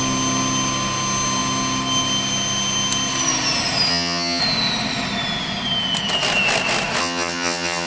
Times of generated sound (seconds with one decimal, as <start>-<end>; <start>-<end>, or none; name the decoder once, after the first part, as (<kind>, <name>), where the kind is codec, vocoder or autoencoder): 3.9-4.4 (vocoder, HiFi-GAN); 7.0-7.9